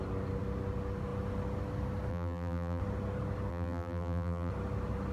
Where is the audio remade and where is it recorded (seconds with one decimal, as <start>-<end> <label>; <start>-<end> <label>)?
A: 0.0-2.1 recorded; 2.1-2.8 remade; 2.8-3.5 recorded; 3.5-4.5 remade; 4.5-5.1 recorded